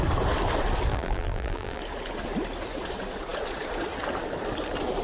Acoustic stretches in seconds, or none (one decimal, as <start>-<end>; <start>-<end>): 0.0-0.9; 1.8-5.0